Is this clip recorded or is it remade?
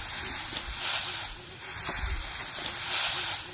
recorded